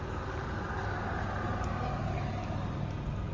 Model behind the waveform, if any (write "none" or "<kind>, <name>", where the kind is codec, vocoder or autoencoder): none